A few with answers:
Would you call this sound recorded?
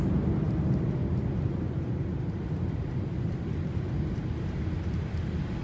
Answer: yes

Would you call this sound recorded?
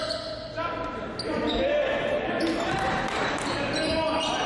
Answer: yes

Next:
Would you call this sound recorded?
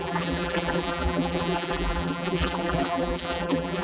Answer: no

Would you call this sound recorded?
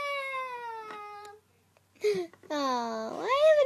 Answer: yes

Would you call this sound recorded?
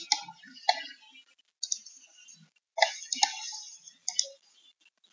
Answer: yes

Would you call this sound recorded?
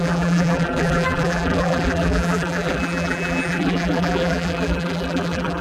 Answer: no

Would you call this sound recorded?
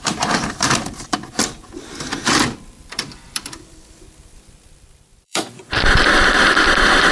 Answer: no